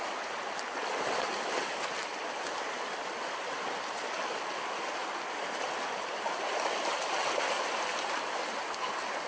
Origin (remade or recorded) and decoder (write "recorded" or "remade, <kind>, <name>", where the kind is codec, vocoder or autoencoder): recorded